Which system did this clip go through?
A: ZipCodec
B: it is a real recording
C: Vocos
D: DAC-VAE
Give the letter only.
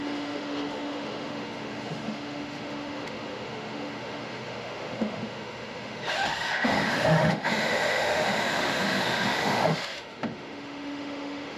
D